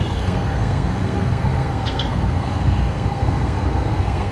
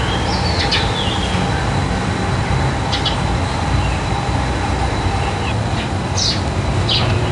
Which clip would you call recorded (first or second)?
second